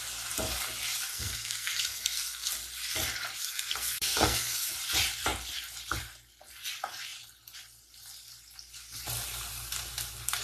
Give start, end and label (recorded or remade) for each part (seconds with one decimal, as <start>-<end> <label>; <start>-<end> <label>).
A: 0.0-1.1 recorded; 1.1-2.5 remade; 2.5-3.4 recorded; 3.4-4.7 remade; 4.7-10.4 recorded